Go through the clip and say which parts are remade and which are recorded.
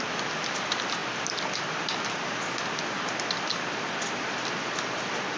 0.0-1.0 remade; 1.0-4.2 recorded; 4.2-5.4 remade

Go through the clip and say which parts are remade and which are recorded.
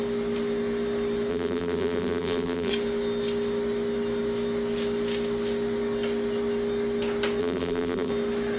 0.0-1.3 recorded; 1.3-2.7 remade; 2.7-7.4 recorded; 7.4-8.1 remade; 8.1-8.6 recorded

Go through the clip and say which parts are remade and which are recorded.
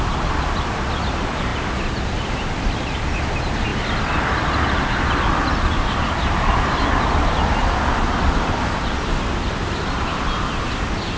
0.0-11.2 recorded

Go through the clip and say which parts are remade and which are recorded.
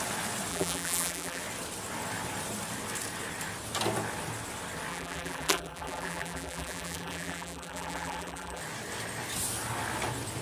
0.0-0.5 recorded; 0.5-1.4 remade; 1.4-4.9 recorded; 4.9-8.6 remade; 8.6-10.4 recorded